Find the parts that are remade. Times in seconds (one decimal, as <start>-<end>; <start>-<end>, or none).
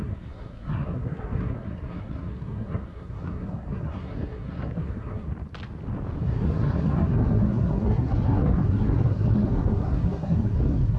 0.0-5.3; 6.2-11.0